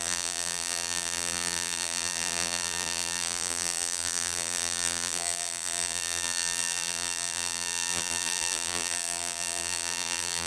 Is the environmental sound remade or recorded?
remade